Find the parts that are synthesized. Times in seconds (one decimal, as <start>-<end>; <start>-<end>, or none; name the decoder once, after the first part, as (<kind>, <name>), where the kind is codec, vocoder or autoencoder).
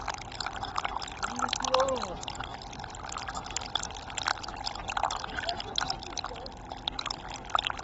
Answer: none